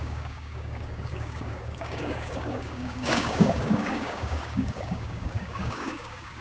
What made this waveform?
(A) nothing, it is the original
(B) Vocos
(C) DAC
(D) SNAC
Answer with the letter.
C